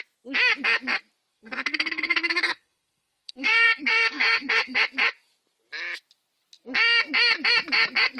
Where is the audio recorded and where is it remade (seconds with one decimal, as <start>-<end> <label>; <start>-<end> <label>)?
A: 0.0-1.3 recorded; 1.3-4.8 remade; 4.8-8.2 recorded